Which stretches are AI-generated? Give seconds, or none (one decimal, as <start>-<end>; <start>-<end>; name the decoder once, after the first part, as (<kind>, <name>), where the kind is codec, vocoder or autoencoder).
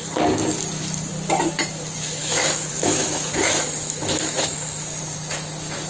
2.2-5.0 (autoencoder, DAC-VAE)